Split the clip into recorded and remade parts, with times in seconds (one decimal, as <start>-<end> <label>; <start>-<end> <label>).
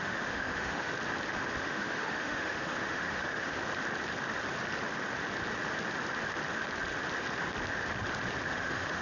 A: 0.0-0.9 remade; 0.9-1.6 recorded; 1.6-3.6 remade; 3.6-8.5 recorded; 8.5-9.0 remade